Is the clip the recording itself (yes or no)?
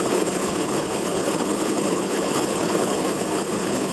no